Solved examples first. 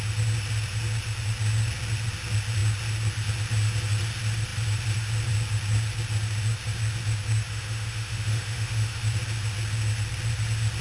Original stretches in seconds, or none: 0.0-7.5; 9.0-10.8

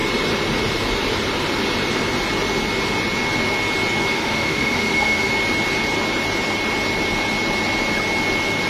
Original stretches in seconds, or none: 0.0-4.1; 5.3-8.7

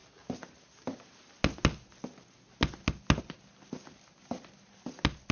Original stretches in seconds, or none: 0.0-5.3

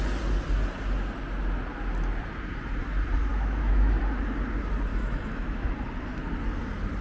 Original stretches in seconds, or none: 0.0-3.3; 4.0-4.9; 5.7-7.0

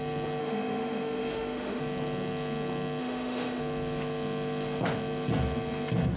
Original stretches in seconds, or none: 0.0-0.4; 1.8-3.0; 3.6-6.2

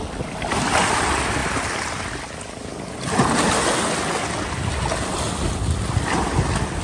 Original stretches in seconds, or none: 0.0-6.8

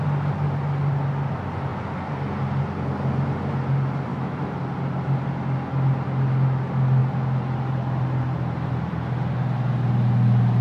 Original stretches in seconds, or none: 0.0-4.1; 4.6-10.6

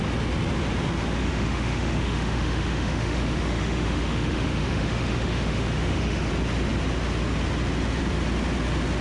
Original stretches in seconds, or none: 0.0-1.2; 6.3-9.0